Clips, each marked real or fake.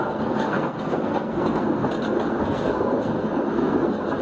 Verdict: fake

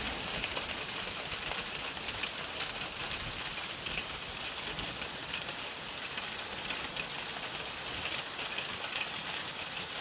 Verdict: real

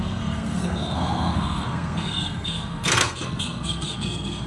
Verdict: fake